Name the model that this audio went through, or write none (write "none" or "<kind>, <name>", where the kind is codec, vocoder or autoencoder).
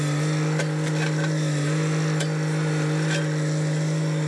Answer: none